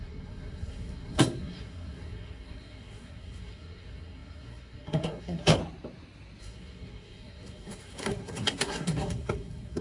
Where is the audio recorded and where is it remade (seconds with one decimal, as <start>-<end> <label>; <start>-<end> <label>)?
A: 0.0-5.6 remade; 5.6-6.4 recorded; 6.4-9.8 remade